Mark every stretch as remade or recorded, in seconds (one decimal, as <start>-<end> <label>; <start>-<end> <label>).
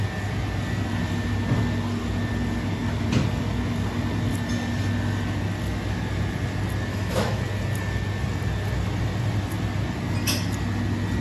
0.0-6.9 recorded; 6.9-7.4 remade; 7.4-11.2 recorded